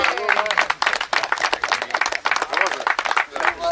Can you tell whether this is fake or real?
real